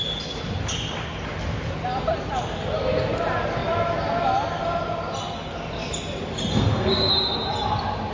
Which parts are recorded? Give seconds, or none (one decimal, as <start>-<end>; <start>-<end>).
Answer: 0.0-6.5; 7.1-8.1